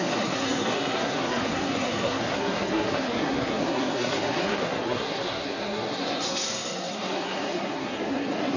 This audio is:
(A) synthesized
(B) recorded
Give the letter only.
A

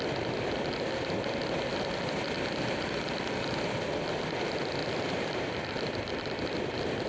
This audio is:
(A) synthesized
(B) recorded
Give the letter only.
A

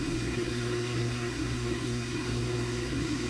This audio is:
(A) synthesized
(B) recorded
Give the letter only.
A